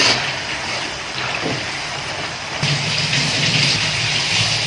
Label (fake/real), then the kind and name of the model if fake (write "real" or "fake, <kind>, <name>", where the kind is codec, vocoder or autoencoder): fake, vocoder, BigVGAN v2